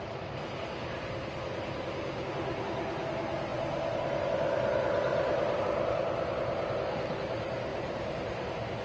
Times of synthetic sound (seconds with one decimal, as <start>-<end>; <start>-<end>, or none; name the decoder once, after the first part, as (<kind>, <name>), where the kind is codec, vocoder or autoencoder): 5.1-5.6 (vocoder, BigVGAN v2); 7.7-8.8